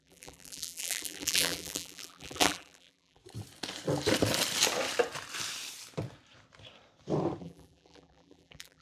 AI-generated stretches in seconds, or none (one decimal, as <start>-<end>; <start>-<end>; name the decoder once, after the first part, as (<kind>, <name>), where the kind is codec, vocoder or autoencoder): 0.0-3.2 (vocoder, BigVGAN v2); 7.4-8.8